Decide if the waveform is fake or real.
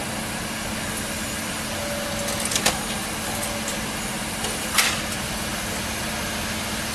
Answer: real